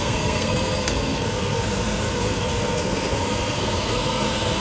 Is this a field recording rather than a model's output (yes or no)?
no